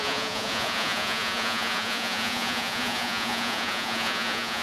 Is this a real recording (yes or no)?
no